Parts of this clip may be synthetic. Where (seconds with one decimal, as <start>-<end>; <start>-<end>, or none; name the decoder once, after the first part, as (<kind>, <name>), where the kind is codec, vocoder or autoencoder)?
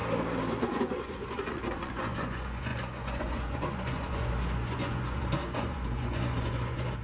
0.6-7.0 (vocoder, Vocos)